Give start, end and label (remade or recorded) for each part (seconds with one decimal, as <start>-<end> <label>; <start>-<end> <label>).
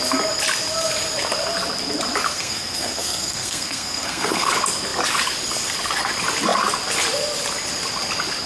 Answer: 0.0-2.3 recorded; 2.3-4.5 remade; 4.5-8.5 recorded